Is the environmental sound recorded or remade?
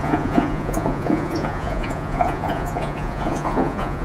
remade